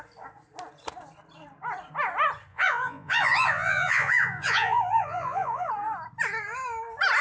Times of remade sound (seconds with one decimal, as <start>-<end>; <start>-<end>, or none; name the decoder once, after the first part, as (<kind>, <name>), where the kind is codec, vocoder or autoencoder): 2.5-5.7 (vocoder, Vocos)